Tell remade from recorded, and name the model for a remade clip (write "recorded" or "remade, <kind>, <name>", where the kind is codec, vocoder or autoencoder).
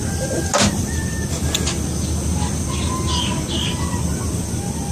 recorded